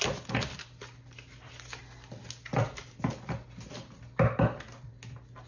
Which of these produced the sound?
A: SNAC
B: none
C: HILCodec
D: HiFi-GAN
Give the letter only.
B